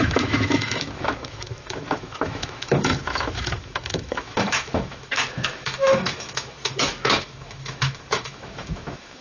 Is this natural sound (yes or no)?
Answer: no